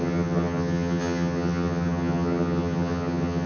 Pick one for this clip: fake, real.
fake